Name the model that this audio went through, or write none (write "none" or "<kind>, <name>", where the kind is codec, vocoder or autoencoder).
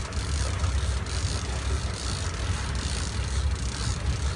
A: none